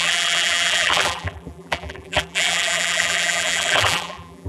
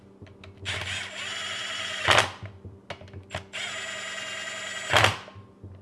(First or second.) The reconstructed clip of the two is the first